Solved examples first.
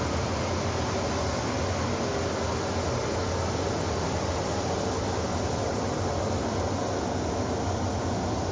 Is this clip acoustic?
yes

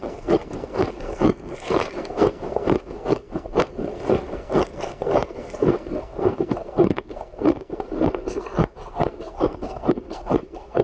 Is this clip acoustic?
no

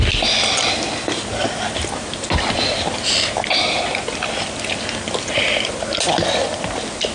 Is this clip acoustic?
yes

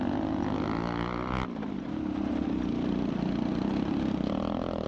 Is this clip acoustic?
yes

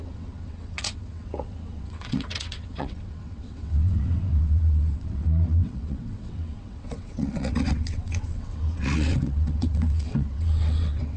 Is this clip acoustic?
no